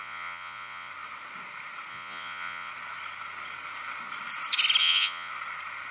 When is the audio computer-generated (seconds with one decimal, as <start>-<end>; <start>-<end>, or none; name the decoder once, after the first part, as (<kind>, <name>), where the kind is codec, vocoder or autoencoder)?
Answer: 0.0-0.9 (vocoder, Vocos); 1.9-2.7; 4.8-5.3